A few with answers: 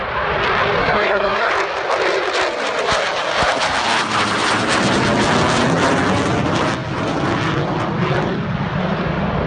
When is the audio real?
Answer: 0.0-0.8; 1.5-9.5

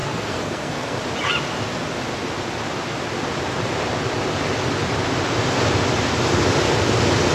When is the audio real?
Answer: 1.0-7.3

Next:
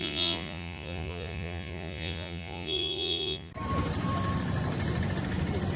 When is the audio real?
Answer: 3.5-5.8

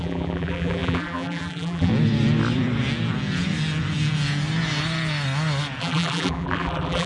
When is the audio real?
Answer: 1.9-5.8

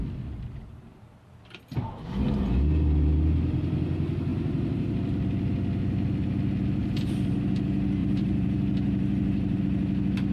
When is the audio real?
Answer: 0.0-4.3; 4.9-6.8; 7.5-8.0; 9.6-10.3